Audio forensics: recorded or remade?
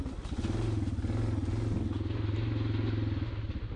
recorded